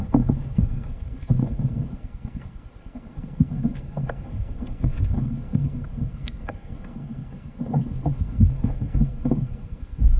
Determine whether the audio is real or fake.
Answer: fake